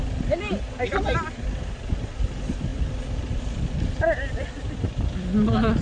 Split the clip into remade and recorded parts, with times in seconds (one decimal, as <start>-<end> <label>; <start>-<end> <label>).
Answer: 0.0-5.8 remade